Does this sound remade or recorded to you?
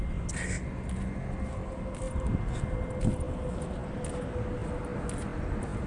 recorded